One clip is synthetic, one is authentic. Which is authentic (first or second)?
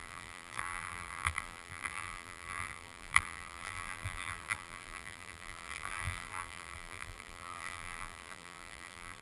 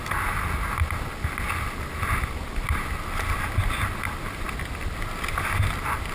second